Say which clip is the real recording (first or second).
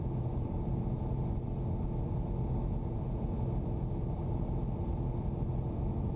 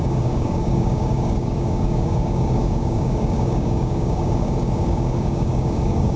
first